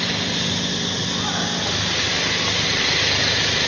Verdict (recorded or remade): recorded